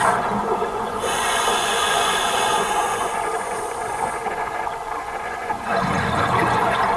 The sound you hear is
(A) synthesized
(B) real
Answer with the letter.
A